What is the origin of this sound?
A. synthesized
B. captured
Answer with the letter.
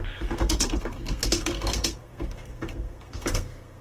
A